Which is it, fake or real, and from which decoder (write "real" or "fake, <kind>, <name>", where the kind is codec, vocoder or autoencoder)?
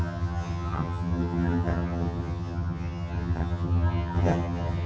fake, vocoder, HiFi-GAN